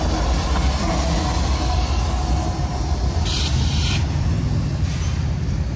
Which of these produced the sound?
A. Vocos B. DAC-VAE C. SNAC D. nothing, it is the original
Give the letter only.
D